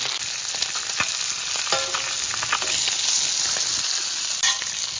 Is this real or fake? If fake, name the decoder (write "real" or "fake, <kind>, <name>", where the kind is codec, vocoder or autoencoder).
real